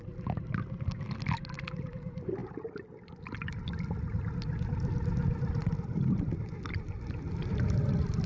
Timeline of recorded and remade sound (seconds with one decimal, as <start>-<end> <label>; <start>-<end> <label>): 0.0-8.3 recorded